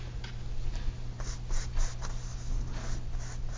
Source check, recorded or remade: recorded